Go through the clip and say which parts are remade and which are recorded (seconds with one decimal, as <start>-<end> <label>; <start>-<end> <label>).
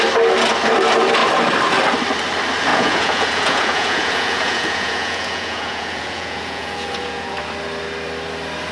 0.0-2.7 recorded; 2.7-7.4 remade; 7.4-8.7 recorded